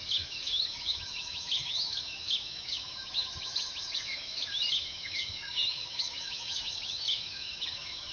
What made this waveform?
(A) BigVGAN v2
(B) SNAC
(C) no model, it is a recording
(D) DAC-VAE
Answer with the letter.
D